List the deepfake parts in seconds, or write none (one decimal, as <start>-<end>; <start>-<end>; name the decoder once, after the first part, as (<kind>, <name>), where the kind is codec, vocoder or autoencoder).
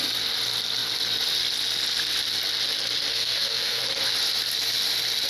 3.1-3.8 (codec, SNAC)